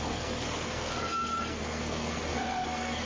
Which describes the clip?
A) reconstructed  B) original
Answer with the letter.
A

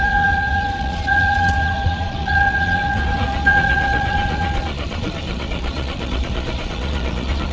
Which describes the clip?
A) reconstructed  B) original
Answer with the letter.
A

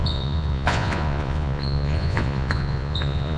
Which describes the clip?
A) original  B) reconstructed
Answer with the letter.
B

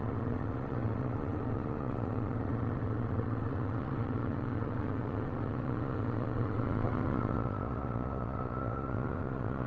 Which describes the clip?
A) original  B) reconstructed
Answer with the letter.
B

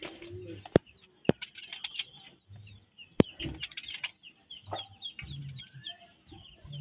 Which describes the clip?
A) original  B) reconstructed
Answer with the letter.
A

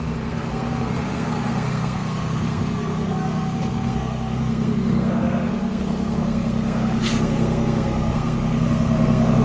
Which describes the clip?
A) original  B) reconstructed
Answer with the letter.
B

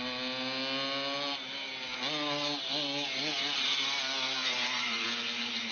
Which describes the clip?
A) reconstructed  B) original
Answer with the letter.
B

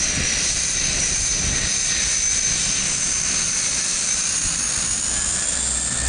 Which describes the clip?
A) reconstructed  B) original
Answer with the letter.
B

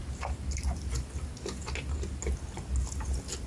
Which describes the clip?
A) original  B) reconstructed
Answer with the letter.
A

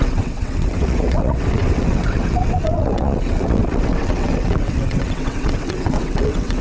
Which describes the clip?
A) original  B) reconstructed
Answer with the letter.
B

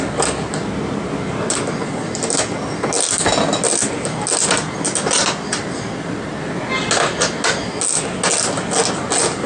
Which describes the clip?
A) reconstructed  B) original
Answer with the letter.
B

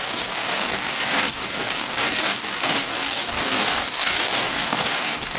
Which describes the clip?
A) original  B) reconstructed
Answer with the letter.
B